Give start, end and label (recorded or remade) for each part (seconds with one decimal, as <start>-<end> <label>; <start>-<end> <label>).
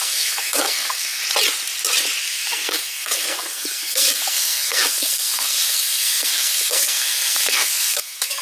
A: 0.0-1.2 remade; 1.2-2.2 recorded; 2.2-8.4 remade